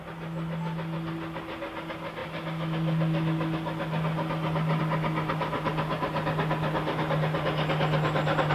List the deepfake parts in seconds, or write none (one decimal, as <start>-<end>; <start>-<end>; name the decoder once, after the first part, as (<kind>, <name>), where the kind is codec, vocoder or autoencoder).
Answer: none